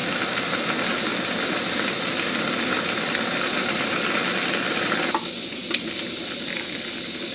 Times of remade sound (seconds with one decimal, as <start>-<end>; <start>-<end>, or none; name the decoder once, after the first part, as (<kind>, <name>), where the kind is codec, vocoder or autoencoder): 0.0-0.6 (vocoder, BigVGAN v2); 1.1-4.2

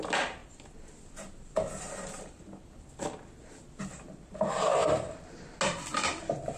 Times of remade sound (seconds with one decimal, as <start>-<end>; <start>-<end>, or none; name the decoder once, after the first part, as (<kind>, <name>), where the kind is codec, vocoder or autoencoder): 0.4-2.9 (vocoder, BigVGAN v2)

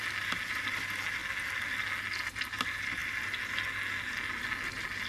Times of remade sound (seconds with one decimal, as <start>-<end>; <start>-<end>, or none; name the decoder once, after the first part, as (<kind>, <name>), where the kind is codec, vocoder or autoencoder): none

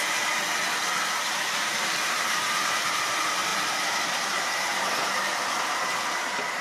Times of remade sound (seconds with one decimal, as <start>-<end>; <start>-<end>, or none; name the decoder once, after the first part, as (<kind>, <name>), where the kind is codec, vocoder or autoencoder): 0.0-0.4 (vocoder, BigVGAN v2); 1.2-3.5; 4.1-6.6

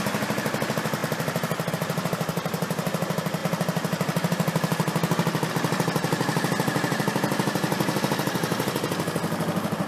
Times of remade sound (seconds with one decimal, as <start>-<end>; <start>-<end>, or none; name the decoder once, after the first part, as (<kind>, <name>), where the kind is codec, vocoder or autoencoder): none

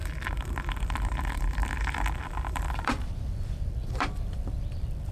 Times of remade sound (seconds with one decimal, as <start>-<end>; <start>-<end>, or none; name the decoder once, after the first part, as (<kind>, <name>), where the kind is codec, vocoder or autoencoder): 0.0-5.1 (vocoder, BigVGAN v2)

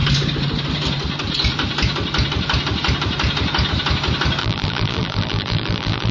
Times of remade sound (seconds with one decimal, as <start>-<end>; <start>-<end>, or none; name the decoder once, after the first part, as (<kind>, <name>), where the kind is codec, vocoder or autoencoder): 4.4-6.1 (vocoder, BigVGAN v2)

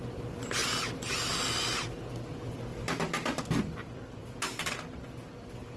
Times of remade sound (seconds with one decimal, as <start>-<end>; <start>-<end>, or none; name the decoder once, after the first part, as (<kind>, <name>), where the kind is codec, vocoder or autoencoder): 2.7-3.4 (vocoder, BigVGAN v2)